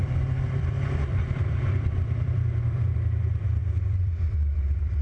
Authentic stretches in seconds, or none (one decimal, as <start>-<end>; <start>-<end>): none